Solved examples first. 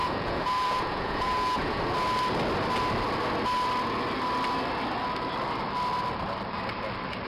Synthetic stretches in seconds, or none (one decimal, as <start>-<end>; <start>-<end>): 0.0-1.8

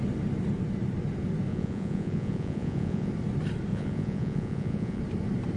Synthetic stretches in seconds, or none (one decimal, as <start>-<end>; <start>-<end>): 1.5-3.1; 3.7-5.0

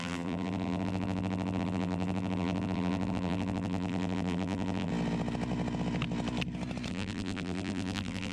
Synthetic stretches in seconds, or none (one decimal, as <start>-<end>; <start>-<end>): 0.0-4.9; 6.9-8.3